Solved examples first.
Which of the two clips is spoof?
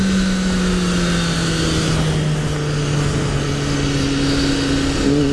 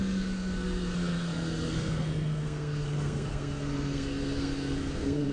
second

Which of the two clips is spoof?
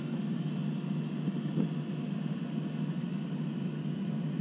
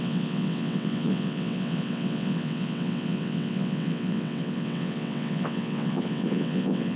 second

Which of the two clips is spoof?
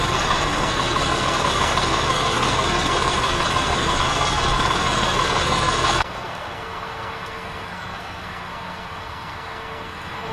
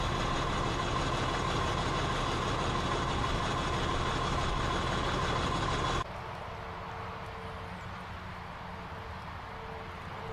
first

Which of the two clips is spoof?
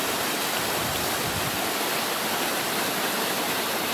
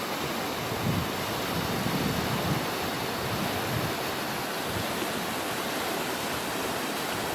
first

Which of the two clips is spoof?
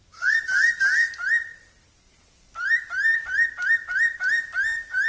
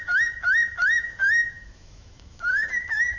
second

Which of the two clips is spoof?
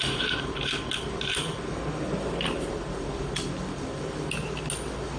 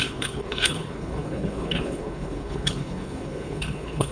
second